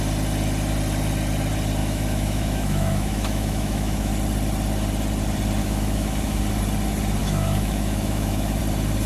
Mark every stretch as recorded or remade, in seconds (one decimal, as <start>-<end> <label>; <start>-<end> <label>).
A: 0.0-1.8 recorded; 1.8-4.1 remade; 4.1-5.6 recorded; 5.6-6.4 remade; 6.4-7.2 recorded; 7.2-8.6 remade; 8.6-9.1 recorded